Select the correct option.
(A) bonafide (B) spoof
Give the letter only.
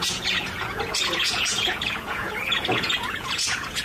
B